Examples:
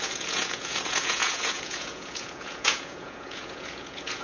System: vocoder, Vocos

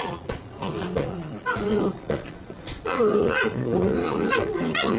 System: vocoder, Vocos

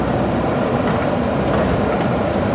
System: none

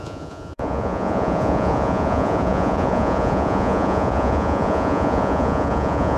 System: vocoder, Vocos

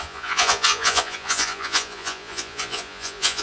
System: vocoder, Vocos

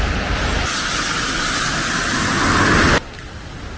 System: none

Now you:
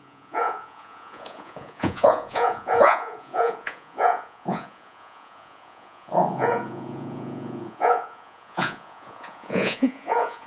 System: vocoder, Vocos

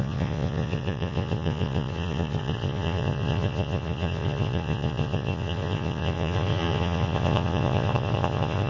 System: vocoder, Vocos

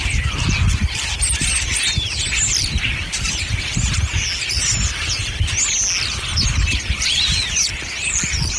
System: none